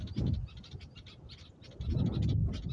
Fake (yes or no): no